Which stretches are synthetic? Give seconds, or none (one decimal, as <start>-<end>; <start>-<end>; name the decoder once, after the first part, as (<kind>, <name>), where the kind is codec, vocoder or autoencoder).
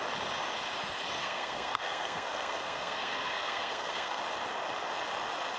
1.2-4.2 (codec, SNAC)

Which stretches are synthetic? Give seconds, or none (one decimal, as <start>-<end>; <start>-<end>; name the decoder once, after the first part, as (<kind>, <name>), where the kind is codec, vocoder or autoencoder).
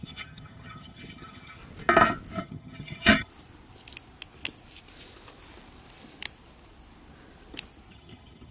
0.0-1.6 (vocoder, HiFi-GAN); 2.4-3.3; 7.9-8.5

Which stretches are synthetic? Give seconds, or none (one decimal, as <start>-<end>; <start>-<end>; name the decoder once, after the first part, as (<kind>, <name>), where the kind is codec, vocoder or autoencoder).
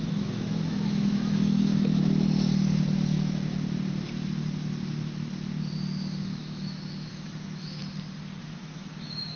0.0-2.0 (autoencoder, DAC-VAE); 6.2-7.8; 8.4-9.4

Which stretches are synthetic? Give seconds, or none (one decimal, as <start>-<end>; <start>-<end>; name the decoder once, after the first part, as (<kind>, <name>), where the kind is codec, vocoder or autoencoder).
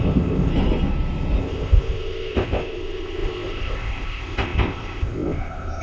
0.0-0.5 (codec, ZipCodec); 1.4-5.8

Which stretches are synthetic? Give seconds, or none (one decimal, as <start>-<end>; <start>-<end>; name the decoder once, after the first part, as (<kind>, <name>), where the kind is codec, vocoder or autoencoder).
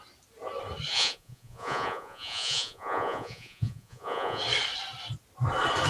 0.9-4.4 (vocoder, Vocos)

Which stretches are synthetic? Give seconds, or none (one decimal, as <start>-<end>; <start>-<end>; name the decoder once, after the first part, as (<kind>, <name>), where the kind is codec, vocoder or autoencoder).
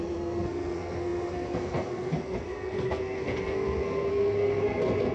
0.0-5.1 (codec, SNAC)